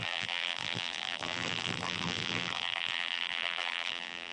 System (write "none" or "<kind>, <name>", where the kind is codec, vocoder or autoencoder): vocoder, BigVGAN v2